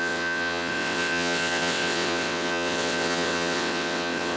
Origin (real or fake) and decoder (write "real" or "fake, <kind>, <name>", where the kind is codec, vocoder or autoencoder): fake, vocoder, WaveNeXt